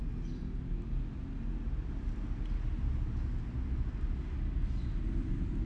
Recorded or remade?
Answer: recorded